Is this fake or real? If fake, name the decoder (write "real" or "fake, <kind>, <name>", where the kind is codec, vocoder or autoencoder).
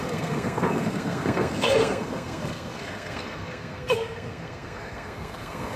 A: fake, codec, SNAC